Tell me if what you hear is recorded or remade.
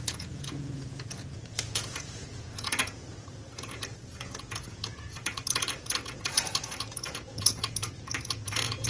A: remade